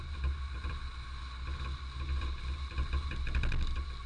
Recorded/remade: recorded